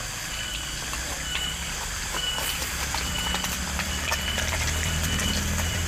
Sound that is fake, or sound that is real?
fake